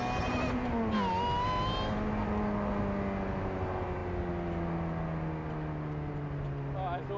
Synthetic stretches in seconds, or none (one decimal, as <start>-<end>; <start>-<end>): none